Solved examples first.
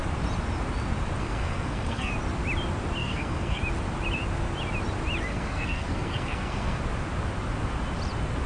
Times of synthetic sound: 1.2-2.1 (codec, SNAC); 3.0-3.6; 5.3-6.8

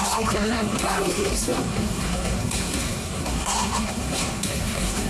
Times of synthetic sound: 0.0-5.1 (codec, SNAC)

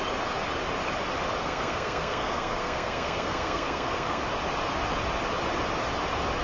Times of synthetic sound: 1.4-4.2 (codec, SNAC)

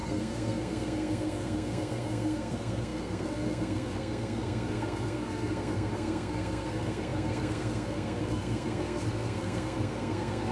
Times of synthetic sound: 0.0-10.5 (codec, SNAC)

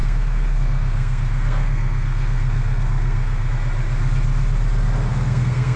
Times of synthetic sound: 0.0-3.5 (codec, SNAC); 5.1-5.8